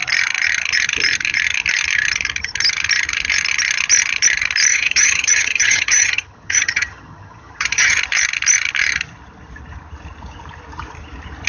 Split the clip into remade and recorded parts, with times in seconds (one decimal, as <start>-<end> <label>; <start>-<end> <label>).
0.0-4.7 recorded; 4.7-8.0 remade; 8.0-11.5 recorded